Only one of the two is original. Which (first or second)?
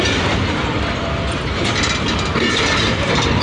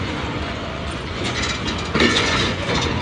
first